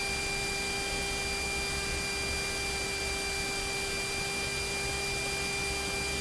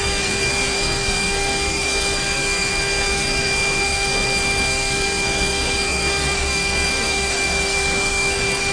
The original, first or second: first